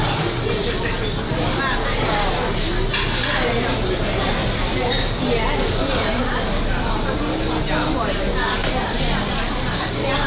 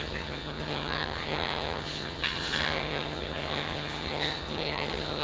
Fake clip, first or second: second